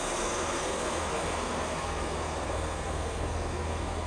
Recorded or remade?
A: remade